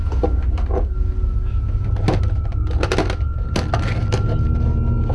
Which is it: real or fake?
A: real